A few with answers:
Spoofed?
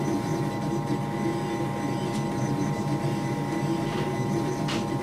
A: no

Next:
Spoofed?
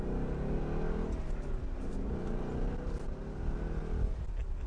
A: no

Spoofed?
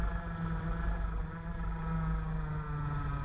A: no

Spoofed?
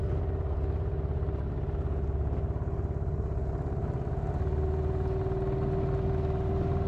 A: no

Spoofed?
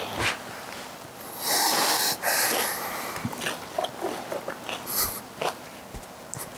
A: no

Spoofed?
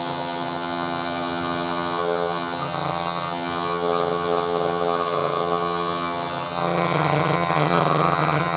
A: yes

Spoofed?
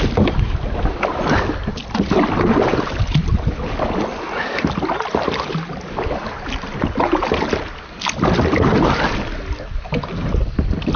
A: no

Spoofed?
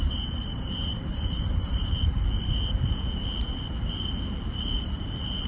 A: yes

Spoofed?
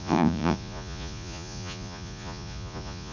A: yes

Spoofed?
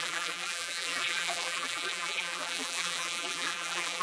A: yes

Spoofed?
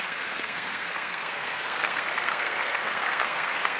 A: yes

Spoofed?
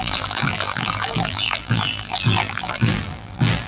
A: yes